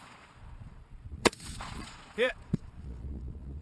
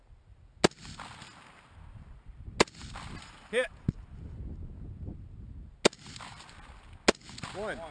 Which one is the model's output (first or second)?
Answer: first